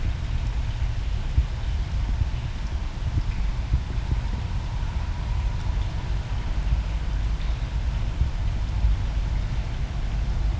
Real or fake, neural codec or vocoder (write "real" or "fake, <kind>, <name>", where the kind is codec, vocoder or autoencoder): real